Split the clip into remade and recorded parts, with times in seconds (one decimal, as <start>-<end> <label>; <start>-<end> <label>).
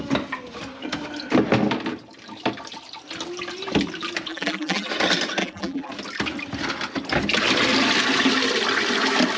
0.0-4.3 recorded; 4.3-4.9 remade; 4.9-5.4 recorded; 5.4-5.9 remade; 5.9-9.4 recorded